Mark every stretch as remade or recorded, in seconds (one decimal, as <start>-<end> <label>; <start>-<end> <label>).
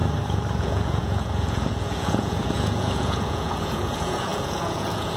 0.0-0.6 recorded; 0.6-5.2 remade